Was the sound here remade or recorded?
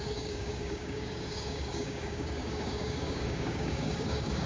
remade